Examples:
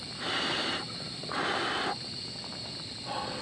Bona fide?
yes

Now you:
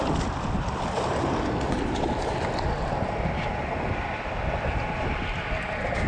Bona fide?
yes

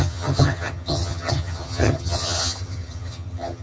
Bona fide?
no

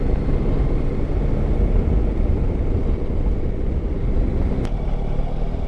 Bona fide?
yes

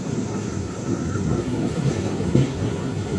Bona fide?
no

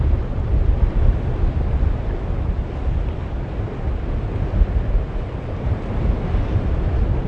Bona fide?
yes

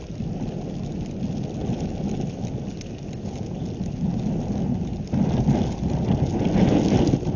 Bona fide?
yes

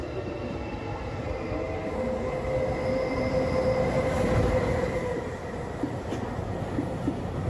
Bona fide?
yes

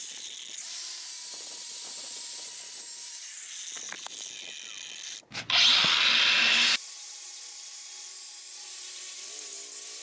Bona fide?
yes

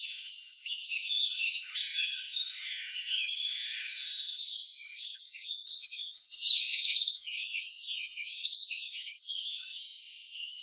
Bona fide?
no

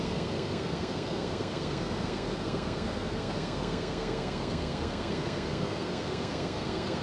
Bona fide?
no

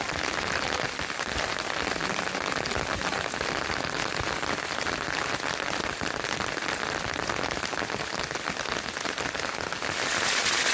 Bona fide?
yes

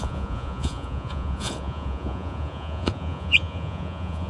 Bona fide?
no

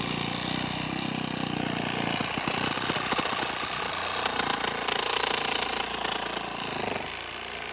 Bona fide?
yes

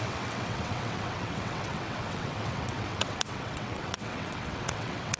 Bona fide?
no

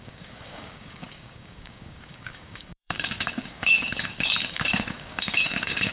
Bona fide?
no